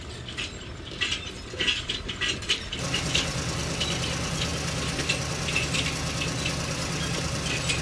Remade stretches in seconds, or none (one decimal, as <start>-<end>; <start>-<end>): none